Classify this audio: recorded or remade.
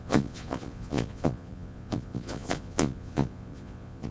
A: remade